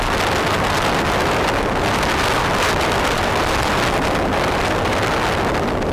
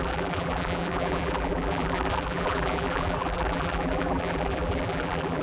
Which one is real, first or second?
first